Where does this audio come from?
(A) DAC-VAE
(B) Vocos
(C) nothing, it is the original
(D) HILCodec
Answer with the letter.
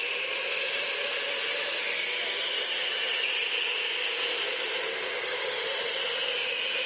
C